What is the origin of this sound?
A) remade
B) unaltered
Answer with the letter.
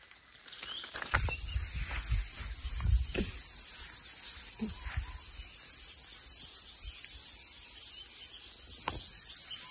B